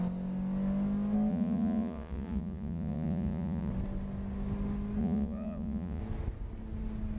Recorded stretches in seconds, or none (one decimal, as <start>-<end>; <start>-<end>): 0.0-1.3; 3.7-5.0; 6.0-7.2